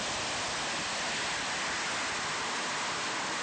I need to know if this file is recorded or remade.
recorded